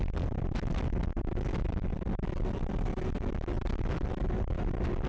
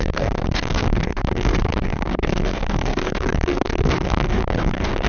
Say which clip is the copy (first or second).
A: second